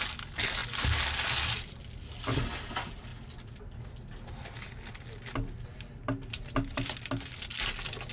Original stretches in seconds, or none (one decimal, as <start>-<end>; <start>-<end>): 0.0-8.1